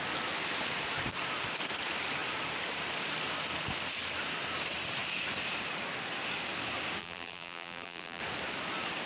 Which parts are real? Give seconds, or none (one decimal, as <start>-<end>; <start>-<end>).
0.0-7.0; 8.2-9.1